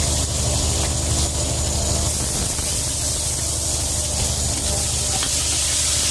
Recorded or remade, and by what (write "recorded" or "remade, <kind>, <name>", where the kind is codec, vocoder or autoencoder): recorded